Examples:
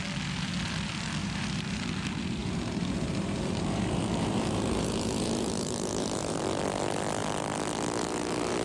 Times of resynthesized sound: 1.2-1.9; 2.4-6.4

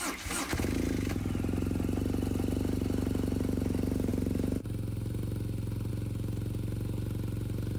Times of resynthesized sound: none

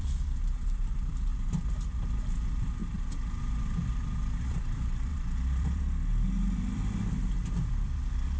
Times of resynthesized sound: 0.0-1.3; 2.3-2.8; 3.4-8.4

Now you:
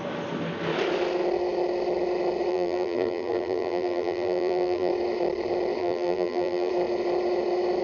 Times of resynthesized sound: 2.5-4.9; 5.8-6.7

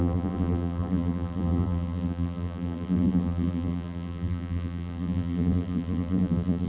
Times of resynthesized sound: 0.0-6.7

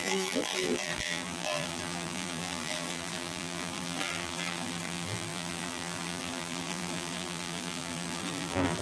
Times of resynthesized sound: 0.0-8.8

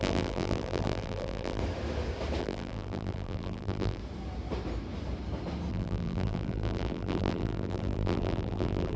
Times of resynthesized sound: 0.0-1.6; 2.4-4.0; 5.7-9.0